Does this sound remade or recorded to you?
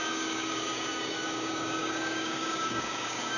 remade